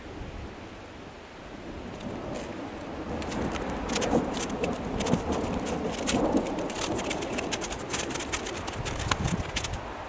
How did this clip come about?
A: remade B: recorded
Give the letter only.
B